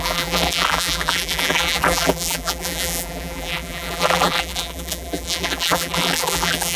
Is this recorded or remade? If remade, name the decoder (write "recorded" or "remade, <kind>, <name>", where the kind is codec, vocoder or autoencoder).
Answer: remade, vocoder, BigVGAN v2